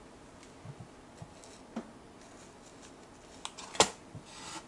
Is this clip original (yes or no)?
yes